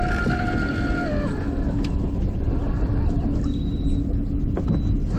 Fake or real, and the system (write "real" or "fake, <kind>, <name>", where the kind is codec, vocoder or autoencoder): real